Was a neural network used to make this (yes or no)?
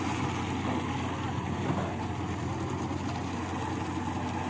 no